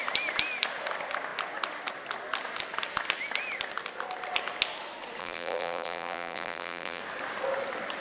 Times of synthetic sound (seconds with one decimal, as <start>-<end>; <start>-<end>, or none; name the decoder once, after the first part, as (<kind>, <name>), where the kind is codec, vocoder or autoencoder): 5.2-7.0 (vocoder, BigVGAN v2)